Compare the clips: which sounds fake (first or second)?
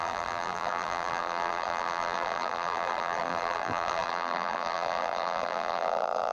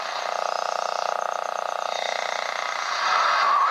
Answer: first